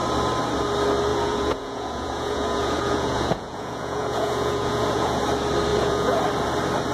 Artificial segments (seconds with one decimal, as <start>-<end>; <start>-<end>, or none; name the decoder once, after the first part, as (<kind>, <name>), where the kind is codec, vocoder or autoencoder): 1.1-5.2 (vocoder, Vocos); 5.7-6.2